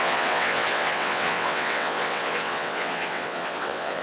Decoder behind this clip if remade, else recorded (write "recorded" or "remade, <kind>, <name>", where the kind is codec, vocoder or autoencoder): remade, vocoder, WaveNeXt